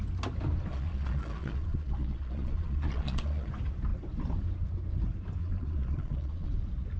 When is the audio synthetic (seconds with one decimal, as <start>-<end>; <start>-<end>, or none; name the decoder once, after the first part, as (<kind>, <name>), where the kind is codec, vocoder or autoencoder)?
0.7-3.5 (vocoder, Vocos); 5.4-6.5

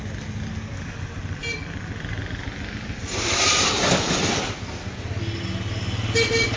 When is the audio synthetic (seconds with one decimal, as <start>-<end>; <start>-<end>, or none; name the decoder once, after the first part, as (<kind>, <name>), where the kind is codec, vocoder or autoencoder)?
none

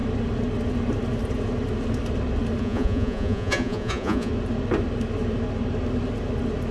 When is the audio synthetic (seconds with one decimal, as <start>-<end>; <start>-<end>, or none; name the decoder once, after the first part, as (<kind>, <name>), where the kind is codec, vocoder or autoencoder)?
2.6-4.3 (vocoder, Vocos)

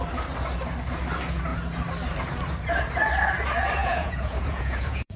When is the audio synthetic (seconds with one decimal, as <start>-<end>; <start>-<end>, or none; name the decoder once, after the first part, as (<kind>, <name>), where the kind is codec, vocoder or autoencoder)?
3.8-5.2 (vocoder, Vocos)

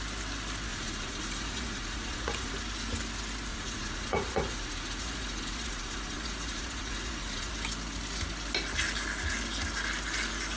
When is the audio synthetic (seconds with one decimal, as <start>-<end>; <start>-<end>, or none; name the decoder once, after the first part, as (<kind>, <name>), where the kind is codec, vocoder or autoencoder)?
0.7-2.5 (vocoder, Vocos); 3.5-7.5

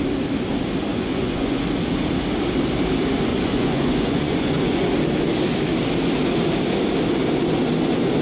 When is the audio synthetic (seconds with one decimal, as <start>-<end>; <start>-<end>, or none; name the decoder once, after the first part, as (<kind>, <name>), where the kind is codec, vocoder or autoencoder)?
0.9-1.6 (vocoder, Vocos); 3.3-4.9

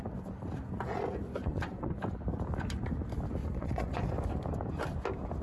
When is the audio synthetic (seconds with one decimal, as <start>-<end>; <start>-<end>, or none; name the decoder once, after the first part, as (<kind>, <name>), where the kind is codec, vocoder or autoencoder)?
1.4-1.9 (vocoder, Vocos); 3.4-4.1

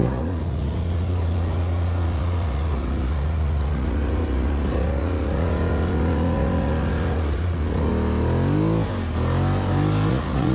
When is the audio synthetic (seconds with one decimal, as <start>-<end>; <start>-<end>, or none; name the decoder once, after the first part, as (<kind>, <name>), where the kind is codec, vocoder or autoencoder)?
0.0-7.9 (vocoder, Vocos); 10.1-10.5